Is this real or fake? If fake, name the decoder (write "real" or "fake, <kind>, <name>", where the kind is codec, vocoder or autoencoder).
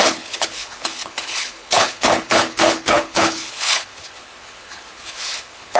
fake, codec, HILCodec